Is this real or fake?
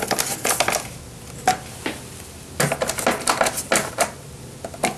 real